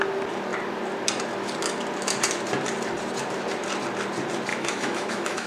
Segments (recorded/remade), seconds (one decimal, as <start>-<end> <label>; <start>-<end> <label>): 0.0-4.5 recorded; 4.5-5.5 remade